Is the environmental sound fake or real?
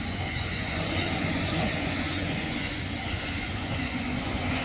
fake